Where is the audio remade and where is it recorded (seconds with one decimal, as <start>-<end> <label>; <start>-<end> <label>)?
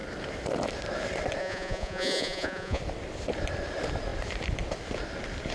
0.0-1.4 recorded; 1.4-2.8 remade; 2.8-5.5 recorded